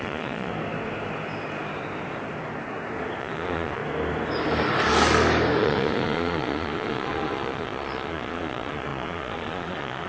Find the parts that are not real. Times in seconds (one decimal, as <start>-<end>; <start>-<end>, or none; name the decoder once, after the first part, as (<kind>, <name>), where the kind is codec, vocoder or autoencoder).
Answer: 0.0-0.5 (vocoder, Vocos); 3.2-3.8; 5.6-10.1